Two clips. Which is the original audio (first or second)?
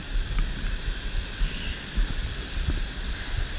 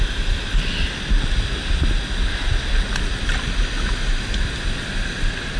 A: second